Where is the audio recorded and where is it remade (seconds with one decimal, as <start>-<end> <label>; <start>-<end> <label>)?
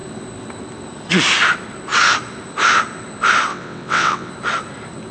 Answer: 0.0-3.5 recorded; 3.5-4.3 remade; 4.3-5.1 recorded